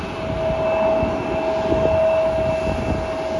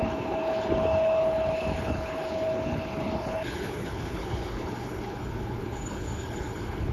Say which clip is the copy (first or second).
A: second